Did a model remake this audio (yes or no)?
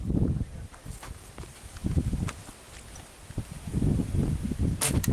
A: no